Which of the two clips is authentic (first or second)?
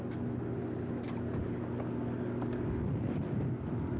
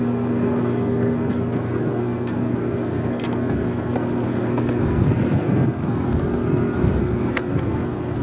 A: first